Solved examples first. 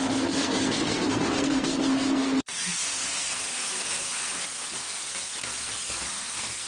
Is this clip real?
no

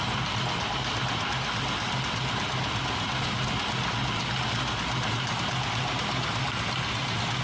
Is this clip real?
yes